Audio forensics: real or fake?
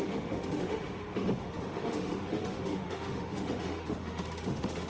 fake